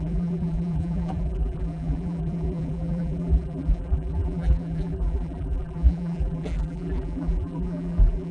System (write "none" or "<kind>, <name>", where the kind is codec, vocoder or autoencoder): vocoder, BigVGAN v2